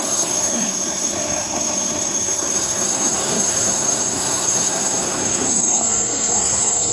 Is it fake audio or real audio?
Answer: fake